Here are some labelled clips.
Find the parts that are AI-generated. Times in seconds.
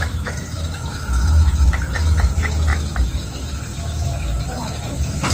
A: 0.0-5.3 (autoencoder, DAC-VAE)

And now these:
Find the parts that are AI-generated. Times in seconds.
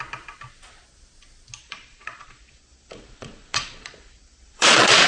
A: 1.6-5.1 (vocoder, Vocos)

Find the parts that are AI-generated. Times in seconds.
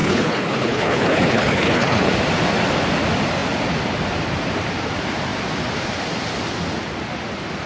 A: 0.0-2.1 (codec, HILCodec)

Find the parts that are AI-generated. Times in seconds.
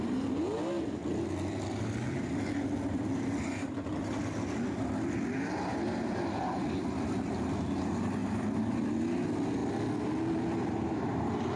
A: none